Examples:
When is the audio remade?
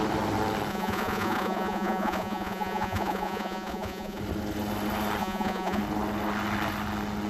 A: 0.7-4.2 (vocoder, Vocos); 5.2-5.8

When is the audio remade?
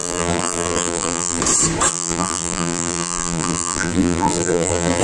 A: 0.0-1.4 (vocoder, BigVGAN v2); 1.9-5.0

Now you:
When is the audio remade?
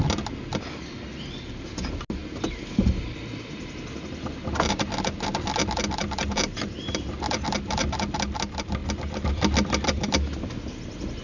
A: none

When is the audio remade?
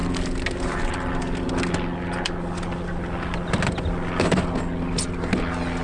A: none